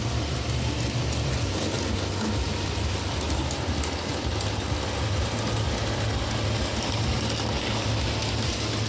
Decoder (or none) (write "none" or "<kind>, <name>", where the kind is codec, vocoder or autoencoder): none